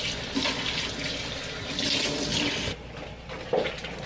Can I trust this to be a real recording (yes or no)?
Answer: yes